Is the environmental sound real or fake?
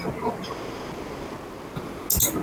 real